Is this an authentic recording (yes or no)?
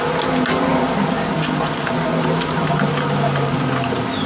yes